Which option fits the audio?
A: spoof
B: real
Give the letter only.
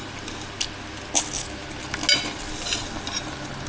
B